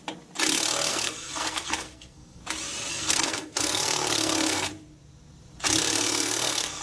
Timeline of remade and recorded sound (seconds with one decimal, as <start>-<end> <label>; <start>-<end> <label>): 0.0-0.9 recorded; 0.9-2.4 remade; 2.4-2.9 recorded; 2.9-4.7 remade; 4.7-5.8 recorded; 5.8-6.8 remade